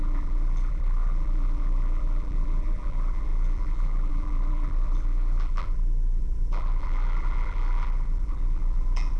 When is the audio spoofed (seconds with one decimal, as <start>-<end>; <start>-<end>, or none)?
0.0-9.2